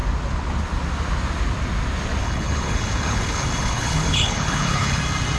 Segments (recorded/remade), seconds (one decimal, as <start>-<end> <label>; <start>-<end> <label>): 0.0-2.2 recorded; 2.2-5.0 remade; 5.0-5.4 recorded